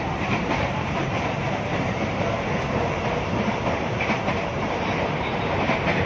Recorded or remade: remade